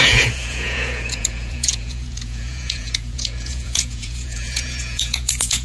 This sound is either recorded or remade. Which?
remade